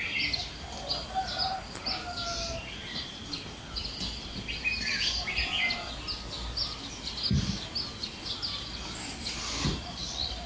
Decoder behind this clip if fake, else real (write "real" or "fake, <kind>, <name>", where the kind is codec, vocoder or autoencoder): real